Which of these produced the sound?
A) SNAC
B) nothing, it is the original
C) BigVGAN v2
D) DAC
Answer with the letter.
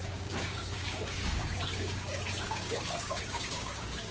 D